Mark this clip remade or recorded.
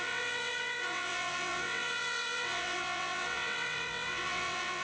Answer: remade